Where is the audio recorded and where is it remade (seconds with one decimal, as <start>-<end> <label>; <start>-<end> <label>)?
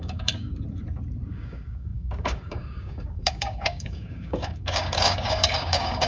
0.0-0.5 remade; 0.5-1.3 recorded; 1.3-6.1 remade